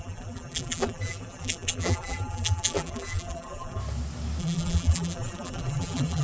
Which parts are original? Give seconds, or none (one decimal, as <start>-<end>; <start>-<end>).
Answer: 3.8-4.4